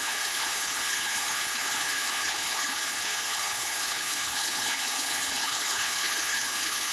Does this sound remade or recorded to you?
remade